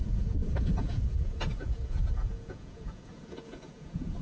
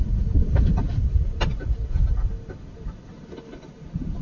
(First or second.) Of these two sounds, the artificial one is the first